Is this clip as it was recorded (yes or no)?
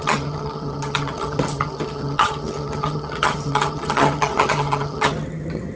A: no